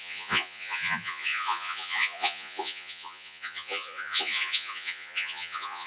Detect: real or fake fake